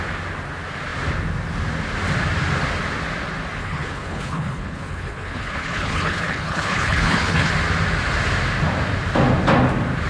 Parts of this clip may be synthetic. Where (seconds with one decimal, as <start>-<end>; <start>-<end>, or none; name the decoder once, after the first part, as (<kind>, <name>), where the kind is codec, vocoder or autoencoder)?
3.6-7.5 (codec, HILCodec)